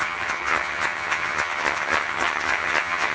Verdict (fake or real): fake